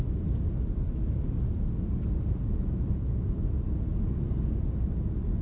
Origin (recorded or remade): recorded